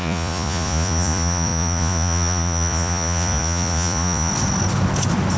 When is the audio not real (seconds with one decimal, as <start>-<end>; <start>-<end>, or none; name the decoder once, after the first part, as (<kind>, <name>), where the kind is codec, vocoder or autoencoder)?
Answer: 0.0-4.3 (vocoder, Vocos)